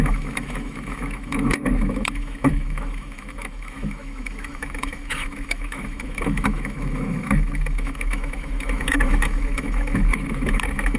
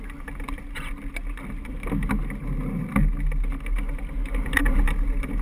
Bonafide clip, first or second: second